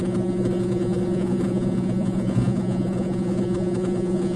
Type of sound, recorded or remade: remade